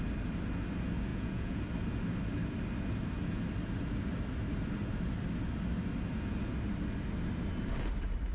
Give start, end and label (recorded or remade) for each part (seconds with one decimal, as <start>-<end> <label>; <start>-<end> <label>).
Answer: 0.0-1.1 recorded; 1.1-1.6 remade; 1.6-8.3 recorded